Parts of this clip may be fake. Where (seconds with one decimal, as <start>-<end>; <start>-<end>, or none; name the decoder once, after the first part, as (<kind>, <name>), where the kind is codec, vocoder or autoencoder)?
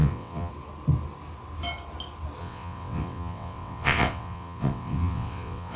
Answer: 0.0-0.5 (vocoder, WaveNeXt); 2.4-5.8